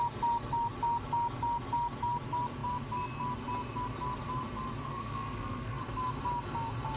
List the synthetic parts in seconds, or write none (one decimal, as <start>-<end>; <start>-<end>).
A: 4.9-5.8